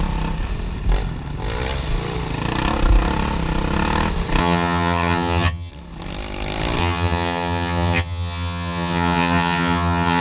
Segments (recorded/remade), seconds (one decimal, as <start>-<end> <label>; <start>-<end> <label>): 0.0-4.4 recorded; 4.4-5.7 remade; 5.7-6.8 recorded; 6.8-10.2 remade